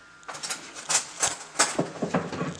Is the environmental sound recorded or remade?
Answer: recorded